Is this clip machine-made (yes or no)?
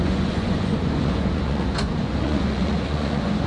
yes